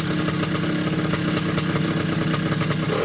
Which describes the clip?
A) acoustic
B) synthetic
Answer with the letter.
A